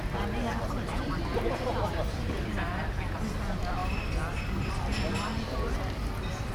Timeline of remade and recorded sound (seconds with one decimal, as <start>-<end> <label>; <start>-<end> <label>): 0.0-1.7 recorded; 1.7-2.7 remade; 2.7-6.5 recorded